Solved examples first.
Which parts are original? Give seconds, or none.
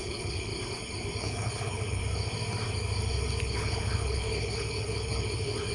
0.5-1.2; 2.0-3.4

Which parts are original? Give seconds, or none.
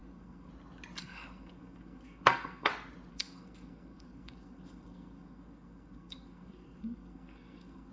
0.5-1.0; 2.7-3.1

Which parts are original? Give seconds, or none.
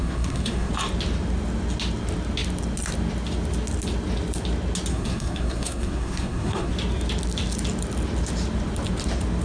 0.7-4.9; 6.7-9.4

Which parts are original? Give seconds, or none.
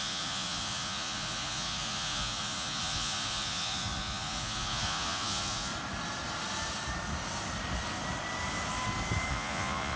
5.7-9.3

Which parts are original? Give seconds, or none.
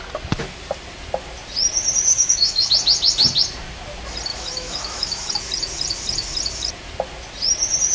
0.0-2.1; 2.7-4.3; 5.3-7.9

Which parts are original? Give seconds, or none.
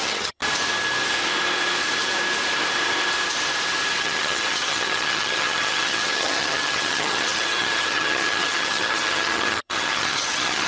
0.4-4.0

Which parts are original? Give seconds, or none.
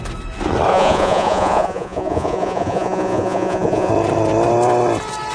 0.0-0.7; 3.9-5.3